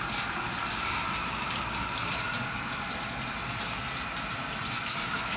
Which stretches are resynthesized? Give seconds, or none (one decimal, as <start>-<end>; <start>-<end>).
1.2-1.9; 4.9-5.4